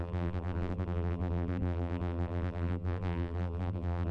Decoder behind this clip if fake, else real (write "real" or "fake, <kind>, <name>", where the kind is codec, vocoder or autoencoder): fake, vocoder, BigVGAN v2